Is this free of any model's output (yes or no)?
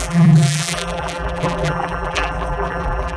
no